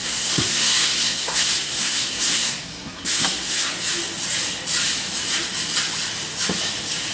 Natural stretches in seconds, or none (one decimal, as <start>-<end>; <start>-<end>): 3.7-7.1